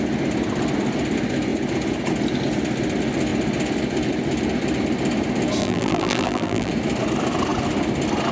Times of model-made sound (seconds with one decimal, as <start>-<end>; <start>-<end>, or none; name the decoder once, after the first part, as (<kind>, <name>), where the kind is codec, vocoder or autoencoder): 5.6-6.7 (vocoder, BigVGAN v2)